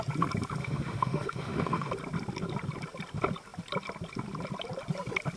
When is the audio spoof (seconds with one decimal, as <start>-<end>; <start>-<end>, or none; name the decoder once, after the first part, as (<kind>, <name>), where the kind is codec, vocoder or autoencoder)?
0.6-1.9 (autoencoder, DAC-VAE)